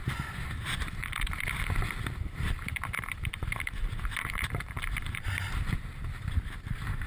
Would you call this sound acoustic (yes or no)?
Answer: no